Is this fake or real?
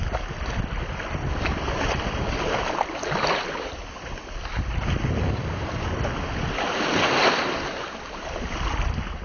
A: real